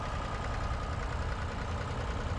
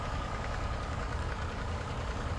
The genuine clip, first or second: first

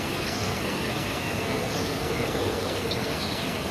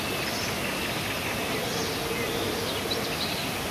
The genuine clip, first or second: second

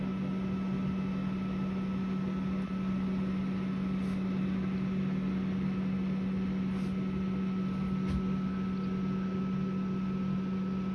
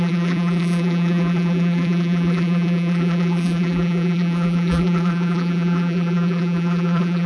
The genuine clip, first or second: first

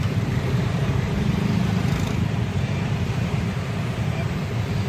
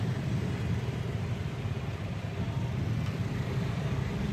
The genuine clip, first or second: second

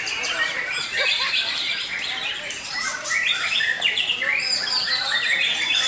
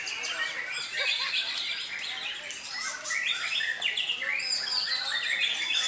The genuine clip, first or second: second